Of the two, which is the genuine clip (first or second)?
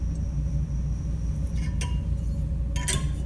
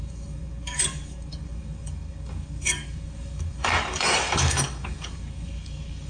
first